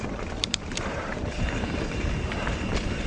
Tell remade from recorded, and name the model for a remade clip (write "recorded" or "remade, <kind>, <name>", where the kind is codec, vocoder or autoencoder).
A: remade, vocoder, BigVGAN v2